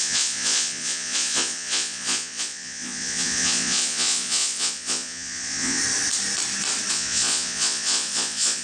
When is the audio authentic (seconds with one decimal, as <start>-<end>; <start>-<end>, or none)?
5.8-6.9